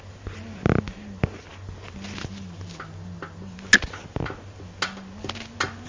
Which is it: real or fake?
real